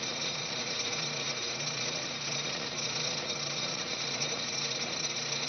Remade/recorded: remade